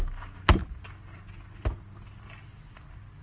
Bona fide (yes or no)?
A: yes